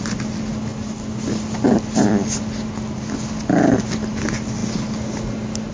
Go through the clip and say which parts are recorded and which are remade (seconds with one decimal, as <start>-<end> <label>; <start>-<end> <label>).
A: 0.0-5.7 recorded